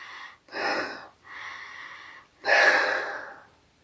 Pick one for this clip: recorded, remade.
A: recorded